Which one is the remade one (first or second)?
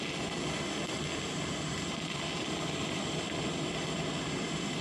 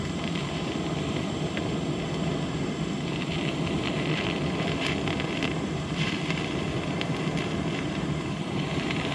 second